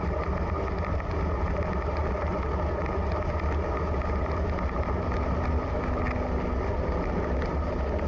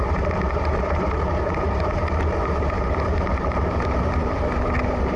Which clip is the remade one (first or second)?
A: second